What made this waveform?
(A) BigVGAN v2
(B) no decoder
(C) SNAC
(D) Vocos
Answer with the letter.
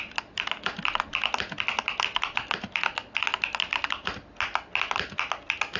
B